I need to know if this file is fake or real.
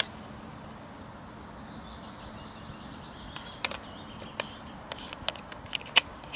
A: real